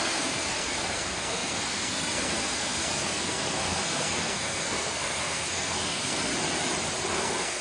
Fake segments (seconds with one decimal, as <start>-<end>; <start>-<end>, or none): 0.0-6.3; 7.1-7.6